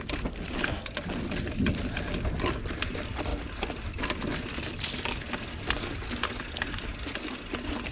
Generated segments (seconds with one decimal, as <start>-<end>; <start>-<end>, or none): none